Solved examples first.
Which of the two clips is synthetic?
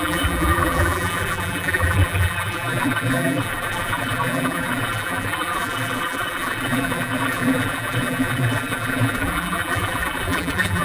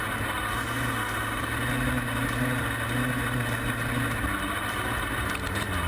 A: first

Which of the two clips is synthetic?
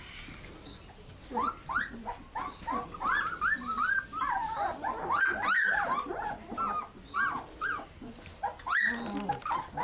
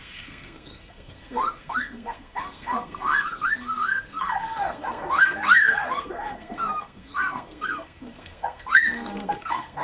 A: second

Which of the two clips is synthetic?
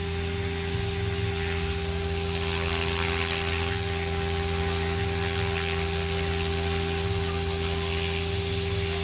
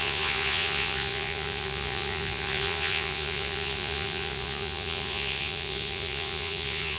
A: second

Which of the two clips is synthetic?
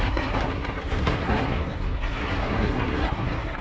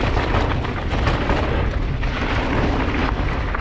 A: first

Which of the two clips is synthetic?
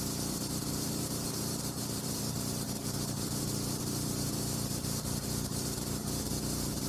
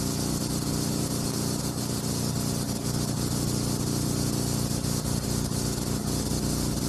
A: first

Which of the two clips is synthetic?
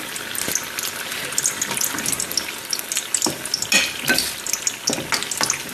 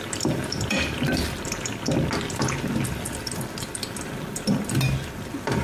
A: second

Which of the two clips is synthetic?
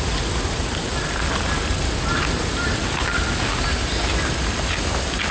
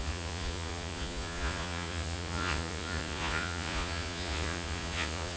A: second